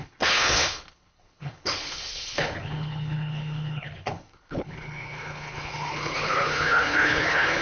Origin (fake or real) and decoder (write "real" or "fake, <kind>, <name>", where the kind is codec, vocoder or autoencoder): fake, codec, HILCodec